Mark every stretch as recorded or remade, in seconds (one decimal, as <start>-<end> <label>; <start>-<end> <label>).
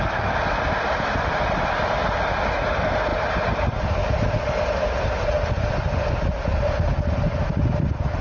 0.0-3.1 recorded; 3.1-4.4 remade; 4.4-8.2 recorded